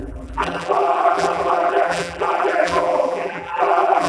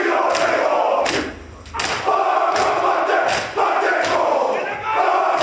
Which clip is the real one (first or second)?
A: second